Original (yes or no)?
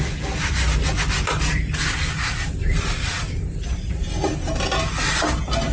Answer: yes